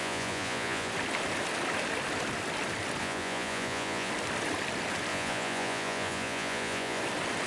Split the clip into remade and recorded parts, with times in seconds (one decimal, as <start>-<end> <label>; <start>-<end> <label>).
0.0-0.9 remade; 0.9-3.0 recorded; 3.0-4.1 remade; 4.1-5.1 recorded; 5.1-7.0 remade; 7.0-7.5 recorded